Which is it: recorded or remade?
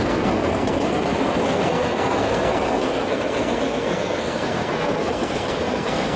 remade